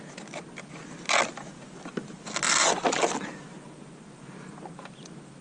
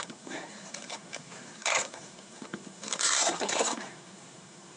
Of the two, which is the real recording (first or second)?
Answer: first